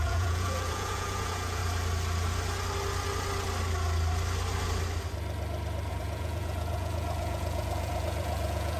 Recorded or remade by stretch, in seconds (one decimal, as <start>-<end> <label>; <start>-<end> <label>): 0.0-1.6 remade; 1.6-5.9 recorded; 5.9-8.8 remade